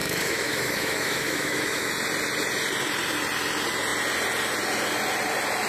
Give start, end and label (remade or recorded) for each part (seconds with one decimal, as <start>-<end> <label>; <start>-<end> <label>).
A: 0.0-1.9 remade; 1.9-5.7 recorded